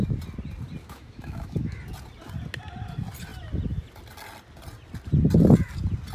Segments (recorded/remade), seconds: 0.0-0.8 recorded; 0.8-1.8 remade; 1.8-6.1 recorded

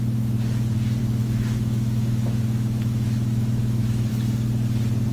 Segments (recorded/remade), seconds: 0.0-1.0 recorded; 1.0-4.1 remade; 4.1-5.1 recorded